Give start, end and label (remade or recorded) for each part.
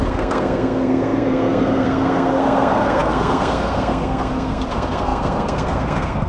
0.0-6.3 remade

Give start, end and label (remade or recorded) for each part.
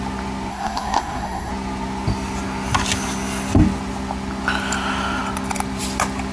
0.0-0.5 recorded; 0.5-1.5 remade; 1.5-6.3 recorded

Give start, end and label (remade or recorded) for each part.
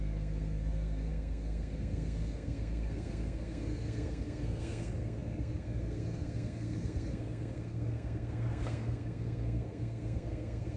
0.0-10.8 remade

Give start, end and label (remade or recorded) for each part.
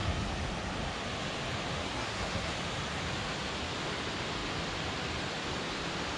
0.0-1.8 recorded; 1.8-2.5 remade; 2.5-6.2 recorded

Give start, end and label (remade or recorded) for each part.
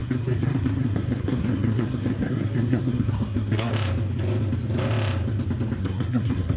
0.0-3.7 remade; 3.7-5.8 recorded; 5.8-6.6 remade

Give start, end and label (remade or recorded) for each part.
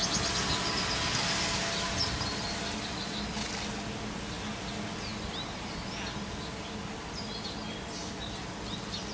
0.0-9.1 recorded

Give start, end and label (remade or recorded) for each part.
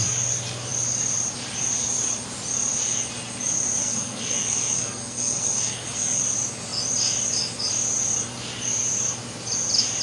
0.0-3.8 recorded; 3.8-6.2 remade; 6.2-10.0 recorded